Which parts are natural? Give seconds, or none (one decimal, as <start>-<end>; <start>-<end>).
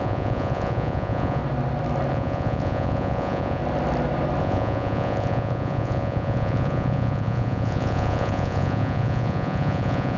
1.4-2.1; 3.6-4.4